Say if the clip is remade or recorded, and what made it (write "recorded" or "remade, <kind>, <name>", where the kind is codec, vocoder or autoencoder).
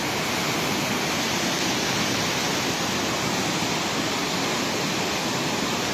recorded